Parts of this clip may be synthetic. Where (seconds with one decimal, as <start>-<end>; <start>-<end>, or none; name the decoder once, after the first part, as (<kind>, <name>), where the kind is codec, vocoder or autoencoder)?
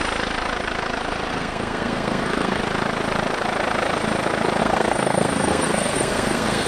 1.3-2.6 (codec, SNAC); 4.6-6.7